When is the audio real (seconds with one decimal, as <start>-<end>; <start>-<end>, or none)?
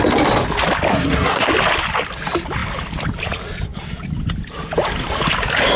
0.0-0.9; 1.5-5.8